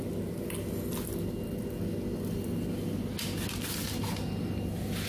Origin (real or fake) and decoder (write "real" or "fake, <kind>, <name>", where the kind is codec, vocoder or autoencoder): real